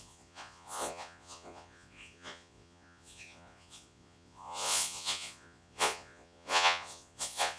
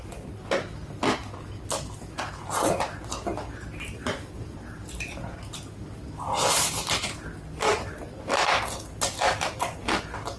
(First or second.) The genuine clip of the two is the second